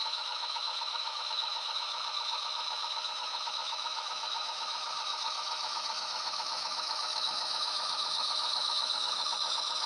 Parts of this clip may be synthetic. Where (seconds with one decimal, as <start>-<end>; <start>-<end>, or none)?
0.0-9.9